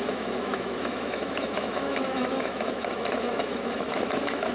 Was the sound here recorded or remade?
remade